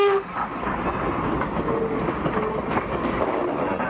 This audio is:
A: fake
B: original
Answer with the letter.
B